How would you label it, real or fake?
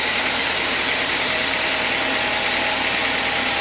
fake